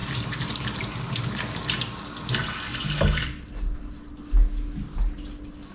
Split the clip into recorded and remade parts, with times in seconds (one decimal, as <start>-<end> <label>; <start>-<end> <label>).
0.0-1.4 remade; 1.4-5.7 recorded